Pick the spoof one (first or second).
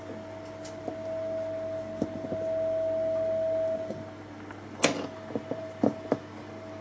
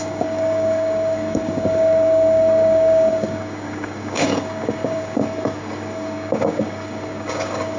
second